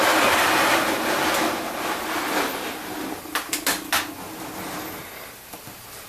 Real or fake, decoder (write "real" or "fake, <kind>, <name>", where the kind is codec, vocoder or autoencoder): real